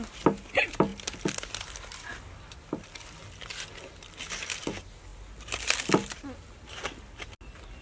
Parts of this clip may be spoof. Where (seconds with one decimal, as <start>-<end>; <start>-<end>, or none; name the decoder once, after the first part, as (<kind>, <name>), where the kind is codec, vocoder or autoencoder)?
none